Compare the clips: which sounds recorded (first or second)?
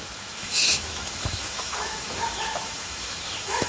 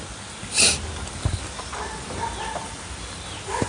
second